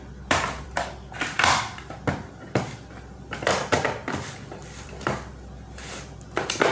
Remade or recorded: remade